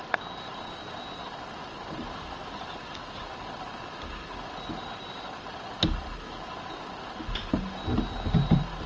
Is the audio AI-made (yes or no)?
no